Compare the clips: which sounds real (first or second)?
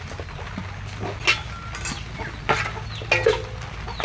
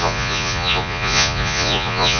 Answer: first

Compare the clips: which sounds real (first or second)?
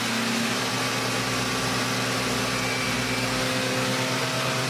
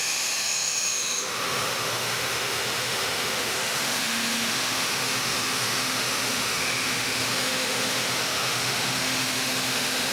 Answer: first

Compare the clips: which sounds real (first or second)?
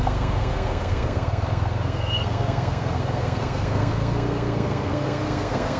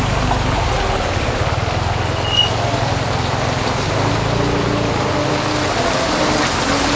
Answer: second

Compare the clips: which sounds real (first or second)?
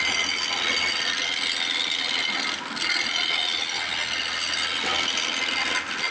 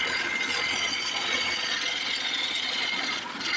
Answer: first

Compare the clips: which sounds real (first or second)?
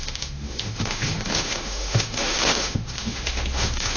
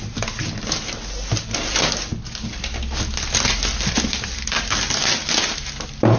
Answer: second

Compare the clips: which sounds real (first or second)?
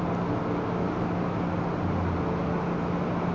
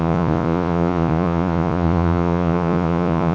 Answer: first